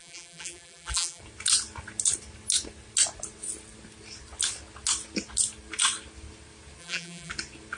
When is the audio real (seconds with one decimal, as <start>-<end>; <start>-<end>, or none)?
1.2-6.8; 7.3-7.8